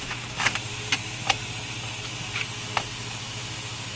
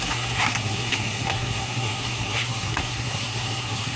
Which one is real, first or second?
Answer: first